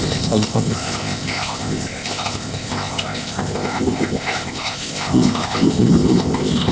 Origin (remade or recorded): remade